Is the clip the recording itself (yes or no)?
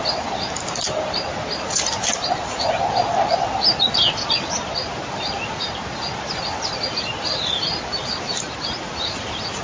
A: yes